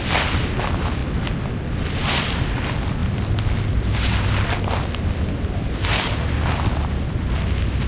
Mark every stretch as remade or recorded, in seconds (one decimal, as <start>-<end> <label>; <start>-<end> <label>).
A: 0.0-7.9 recorded